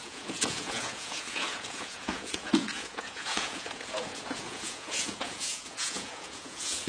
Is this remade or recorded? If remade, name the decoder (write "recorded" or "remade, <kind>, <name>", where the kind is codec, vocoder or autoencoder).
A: remade, vocoder, Vocos